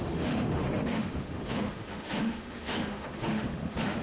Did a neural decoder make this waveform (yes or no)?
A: yes